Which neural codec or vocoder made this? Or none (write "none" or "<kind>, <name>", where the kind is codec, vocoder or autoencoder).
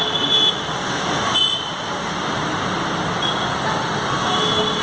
none